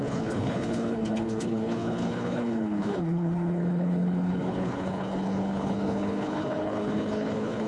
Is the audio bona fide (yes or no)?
no